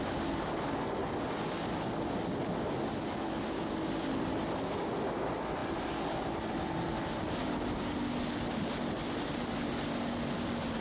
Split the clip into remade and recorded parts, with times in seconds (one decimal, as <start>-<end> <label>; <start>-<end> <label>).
0.0-10.8 recorded